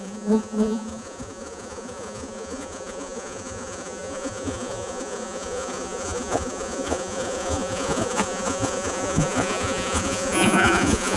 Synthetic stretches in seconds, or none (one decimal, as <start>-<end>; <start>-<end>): 0.0-11.2